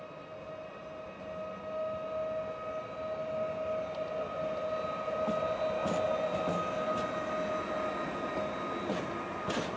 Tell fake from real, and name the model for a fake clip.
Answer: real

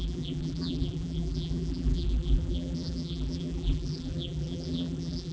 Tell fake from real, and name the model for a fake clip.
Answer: fake, vocoder, BigVGAN v2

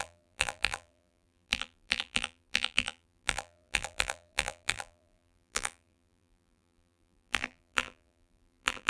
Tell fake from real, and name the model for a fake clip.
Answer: fake, vocoder, BigVGAN v2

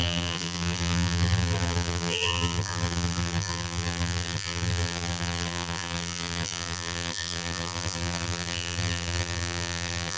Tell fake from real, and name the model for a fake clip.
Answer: fake, vocoder, BigVGAN v2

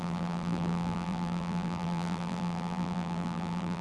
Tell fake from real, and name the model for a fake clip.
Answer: fake, vocoder, BigVGAN v2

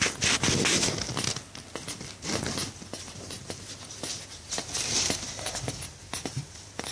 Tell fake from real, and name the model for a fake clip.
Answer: real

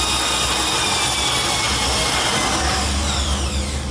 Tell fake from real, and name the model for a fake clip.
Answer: real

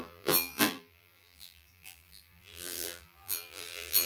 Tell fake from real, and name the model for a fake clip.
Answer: fake, vocoder, BigVGAN v2